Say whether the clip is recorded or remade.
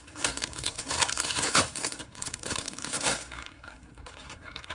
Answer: remade